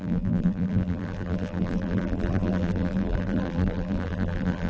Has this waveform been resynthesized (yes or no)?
yes